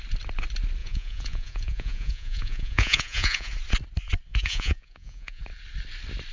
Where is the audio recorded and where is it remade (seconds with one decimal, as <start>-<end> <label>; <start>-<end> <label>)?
0.0-0.8 recorded; 0.8-3.5 remade; 3.5-4.3 recorded; 4.3-5.4 remade; 5.4-6.3 recorded